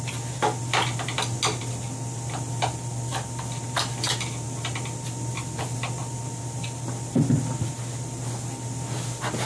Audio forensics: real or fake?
real